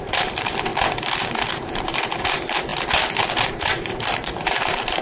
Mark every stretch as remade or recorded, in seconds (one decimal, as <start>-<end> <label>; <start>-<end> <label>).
0.0-0.7 remade; 0.7-1.5 recorded; 1.5-2.7 remade; 2.7-3.5 recorded; 3.5-5.0 remade